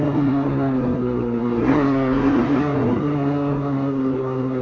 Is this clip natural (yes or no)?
no